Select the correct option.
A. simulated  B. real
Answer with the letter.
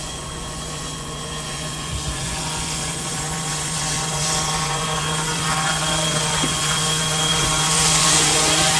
A